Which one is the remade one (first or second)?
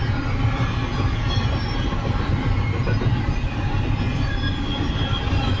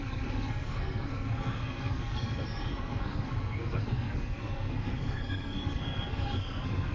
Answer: second